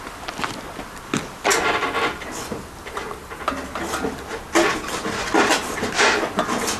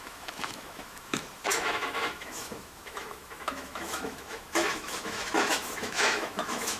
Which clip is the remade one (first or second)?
second